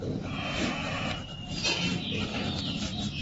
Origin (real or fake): real